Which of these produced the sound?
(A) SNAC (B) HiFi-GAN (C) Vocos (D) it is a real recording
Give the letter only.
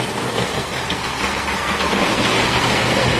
A